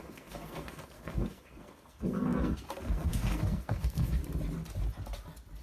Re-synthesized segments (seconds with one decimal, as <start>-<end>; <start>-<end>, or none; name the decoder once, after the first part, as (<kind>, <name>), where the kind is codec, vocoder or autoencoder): 0.0-4.2 (codec, SNAC)